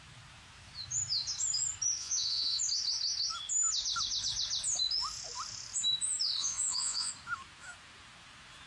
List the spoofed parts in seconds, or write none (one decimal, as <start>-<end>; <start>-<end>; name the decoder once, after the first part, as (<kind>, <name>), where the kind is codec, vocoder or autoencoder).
2.0-2.6 (vocoder, Vocos); 6.4-7.1